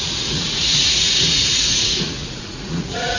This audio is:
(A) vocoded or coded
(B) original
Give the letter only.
A